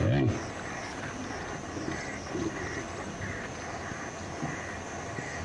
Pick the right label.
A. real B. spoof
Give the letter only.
A